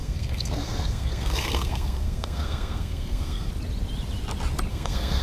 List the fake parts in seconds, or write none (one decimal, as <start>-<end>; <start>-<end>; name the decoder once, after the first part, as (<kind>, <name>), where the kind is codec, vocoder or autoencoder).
0.0-3.5 (codec, SNAC); 4.7-5.2